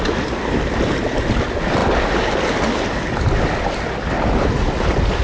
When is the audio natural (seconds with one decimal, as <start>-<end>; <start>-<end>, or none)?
0.0-5.2